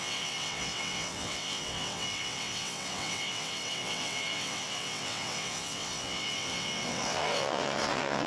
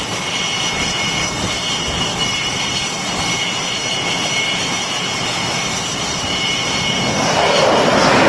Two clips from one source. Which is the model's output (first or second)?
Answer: first